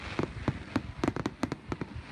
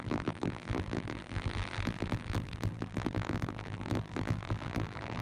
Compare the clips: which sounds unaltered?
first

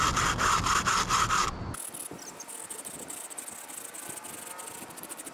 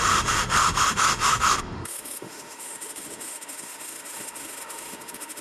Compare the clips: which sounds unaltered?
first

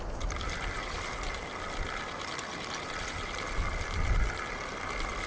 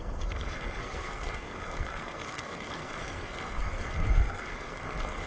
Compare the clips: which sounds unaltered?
first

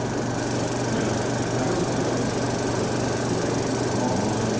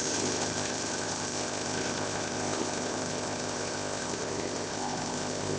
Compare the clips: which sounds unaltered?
first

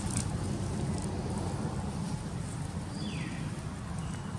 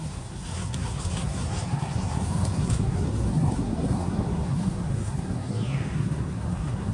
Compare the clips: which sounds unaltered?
first